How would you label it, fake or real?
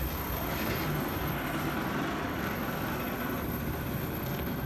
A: real